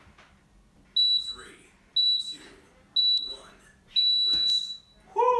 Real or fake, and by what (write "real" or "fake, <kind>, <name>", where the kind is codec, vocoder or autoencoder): real